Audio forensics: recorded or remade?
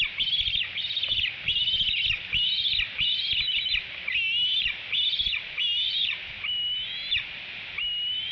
recorded